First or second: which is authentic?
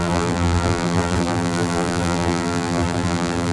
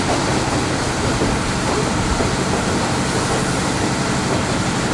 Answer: second